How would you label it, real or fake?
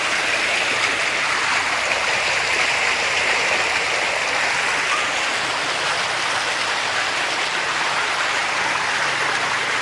real